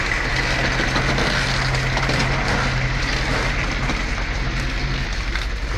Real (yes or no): yes